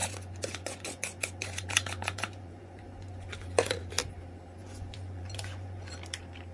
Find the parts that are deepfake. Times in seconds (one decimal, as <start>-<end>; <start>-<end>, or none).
0.0-3.9; 4.6-5.9